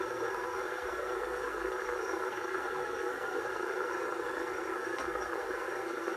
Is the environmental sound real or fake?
fake